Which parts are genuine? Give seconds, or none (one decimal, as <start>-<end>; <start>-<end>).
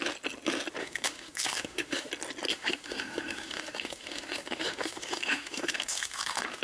0.0-0.8; 2.1-2.5